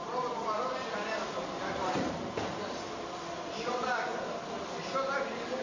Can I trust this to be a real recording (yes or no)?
yes